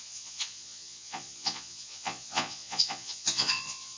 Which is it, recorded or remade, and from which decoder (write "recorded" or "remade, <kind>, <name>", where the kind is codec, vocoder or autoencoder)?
remade, vocoder, Vocos